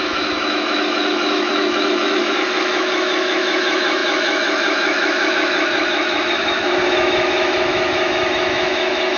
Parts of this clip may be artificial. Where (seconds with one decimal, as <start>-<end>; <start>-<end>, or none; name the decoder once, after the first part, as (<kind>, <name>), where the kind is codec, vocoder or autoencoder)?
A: 0.0-9.2 (autoencoder, DAC-VAE)